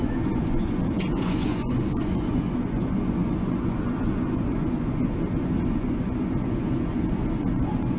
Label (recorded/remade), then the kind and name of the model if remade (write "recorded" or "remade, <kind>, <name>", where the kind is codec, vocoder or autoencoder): remade, vocoder, Vocos